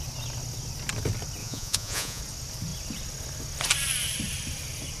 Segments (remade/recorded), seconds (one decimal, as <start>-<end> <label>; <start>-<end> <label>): 0.0-1.4 recorded; 1.4-2.2 remade; 2.2-5.0 recorded